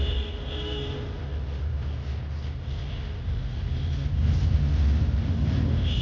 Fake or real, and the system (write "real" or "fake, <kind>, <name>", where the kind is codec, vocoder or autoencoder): real